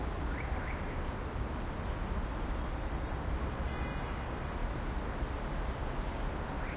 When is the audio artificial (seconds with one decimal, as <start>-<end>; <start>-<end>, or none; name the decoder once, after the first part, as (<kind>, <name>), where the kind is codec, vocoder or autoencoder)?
none